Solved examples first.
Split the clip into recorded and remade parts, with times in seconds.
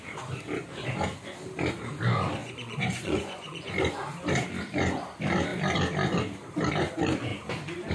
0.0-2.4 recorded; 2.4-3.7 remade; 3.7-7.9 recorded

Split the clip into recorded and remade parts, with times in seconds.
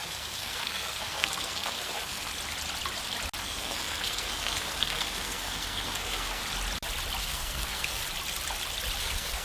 0.0-2.3 remade; 2.3-3.4 recorded; 3.4-6.4 remade; 6.4-7.2 recorded; 7.2-8.0 remade; 8.0-9.0 recorded; 9.0-9.4 remade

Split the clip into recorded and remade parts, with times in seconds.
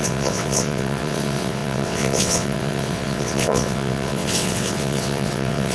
0.0-5.7 remade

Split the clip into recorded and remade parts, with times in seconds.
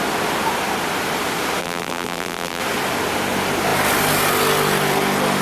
0.0-1.6 recorded; 1.6-2.6 remade; 2.6-5.4 recorded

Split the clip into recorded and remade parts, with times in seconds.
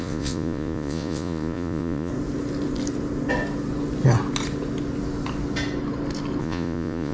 0.0-2.1 remade; 2.1-6.4 recorded; 6.4-7.1 remade